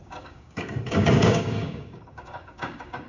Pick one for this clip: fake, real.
fake